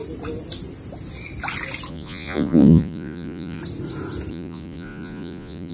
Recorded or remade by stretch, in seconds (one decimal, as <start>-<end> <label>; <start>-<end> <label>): 0.0-1.9 recorded; 1.9-3.6 remade; 3.6-4.3 recorded; 4.3-5.7 remade